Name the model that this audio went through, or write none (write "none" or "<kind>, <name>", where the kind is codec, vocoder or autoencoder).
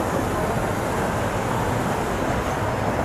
none